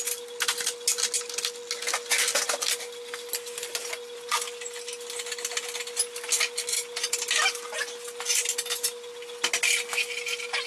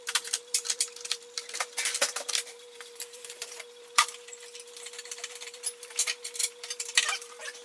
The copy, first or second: second